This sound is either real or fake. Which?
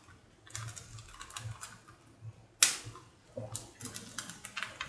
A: real